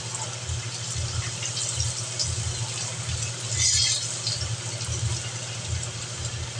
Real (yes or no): yes